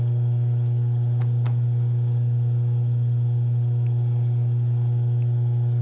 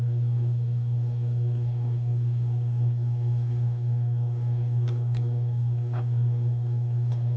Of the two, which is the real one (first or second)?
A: first